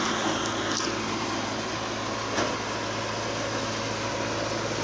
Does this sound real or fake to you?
real